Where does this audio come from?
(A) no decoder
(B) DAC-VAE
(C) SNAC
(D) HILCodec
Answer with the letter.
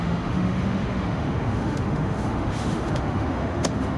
B